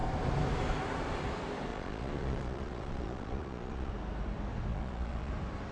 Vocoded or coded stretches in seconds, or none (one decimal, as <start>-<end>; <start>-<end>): 1.7-3.9; 4.7-5.3